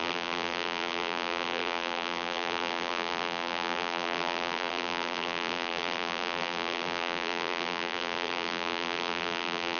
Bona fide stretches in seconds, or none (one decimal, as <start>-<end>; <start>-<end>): none